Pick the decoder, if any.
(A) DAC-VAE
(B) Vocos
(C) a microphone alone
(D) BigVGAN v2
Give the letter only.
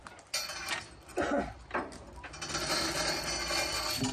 C